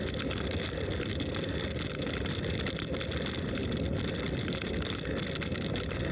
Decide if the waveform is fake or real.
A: real